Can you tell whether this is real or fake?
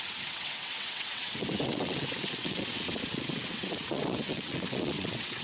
fake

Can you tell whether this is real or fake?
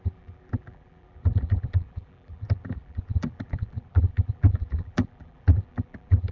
fake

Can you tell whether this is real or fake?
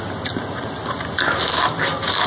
real